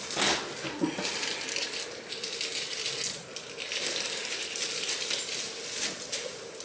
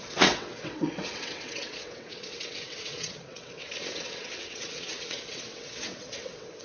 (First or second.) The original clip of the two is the first